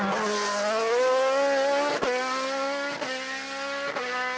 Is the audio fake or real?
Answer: real